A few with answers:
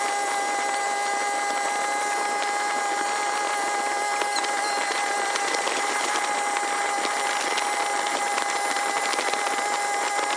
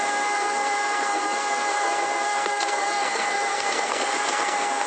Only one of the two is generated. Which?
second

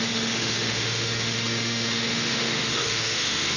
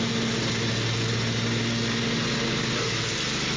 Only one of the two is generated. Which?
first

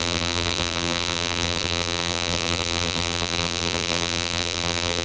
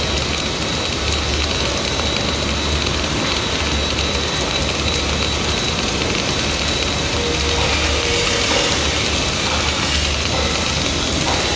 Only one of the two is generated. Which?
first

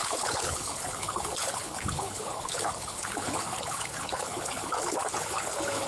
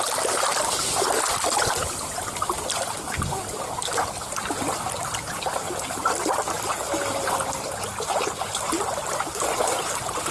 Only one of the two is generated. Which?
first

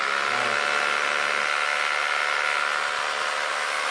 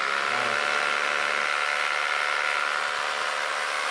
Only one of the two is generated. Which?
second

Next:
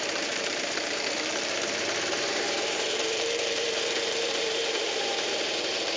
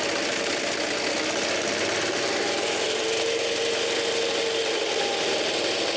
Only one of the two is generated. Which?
first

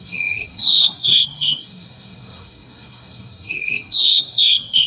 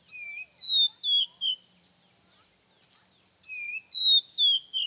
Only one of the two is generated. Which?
first